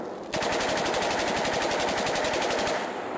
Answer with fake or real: real